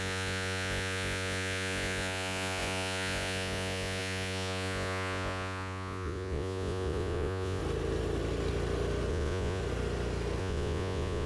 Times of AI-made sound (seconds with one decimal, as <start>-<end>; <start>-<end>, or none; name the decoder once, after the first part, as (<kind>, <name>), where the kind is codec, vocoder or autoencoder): 0.0-7.6 (vocoder, Vocos); 9.1-9.6; 10.4-11.3